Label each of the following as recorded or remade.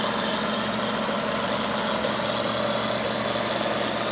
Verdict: recorded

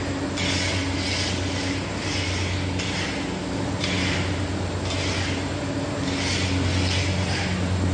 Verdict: recorded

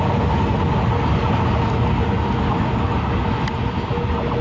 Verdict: recorded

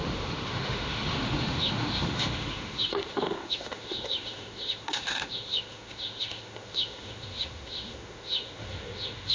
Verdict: remade